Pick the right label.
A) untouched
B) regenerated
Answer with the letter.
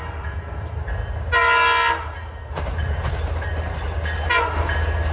A